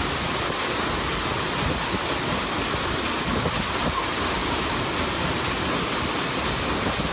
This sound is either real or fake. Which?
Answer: real